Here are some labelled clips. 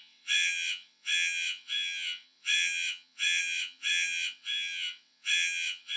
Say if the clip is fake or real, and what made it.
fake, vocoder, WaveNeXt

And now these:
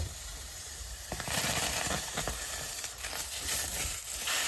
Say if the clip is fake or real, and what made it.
fake, vocoder, BigVGAN v2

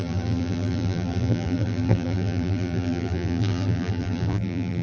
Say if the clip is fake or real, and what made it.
fake, vocoder, BigVGAN v2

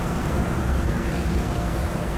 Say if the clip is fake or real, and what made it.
fake, codec, SNAC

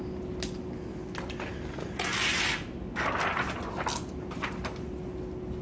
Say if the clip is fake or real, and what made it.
real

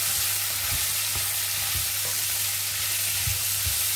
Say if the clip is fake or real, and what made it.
real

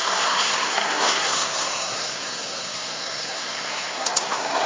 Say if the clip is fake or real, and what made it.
fake, codec, SNAC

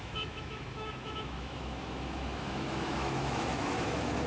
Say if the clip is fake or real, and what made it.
fake, autoencoder, DAC-VAE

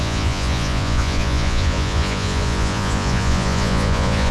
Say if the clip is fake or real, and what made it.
fake, vocoder, Vocos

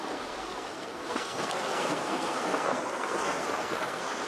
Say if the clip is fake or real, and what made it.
fake, codec, SNAC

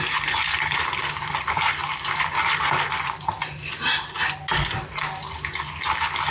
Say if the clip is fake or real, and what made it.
real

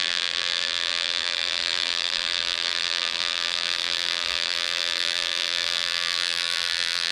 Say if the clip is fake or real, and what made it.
fake, vocoder, BigVGAN v2